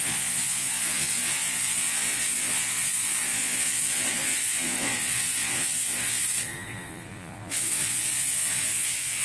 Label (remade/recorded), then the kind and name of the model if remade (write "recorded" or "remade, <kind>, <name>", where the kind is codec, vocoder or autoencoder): remade, vocoder, Vocos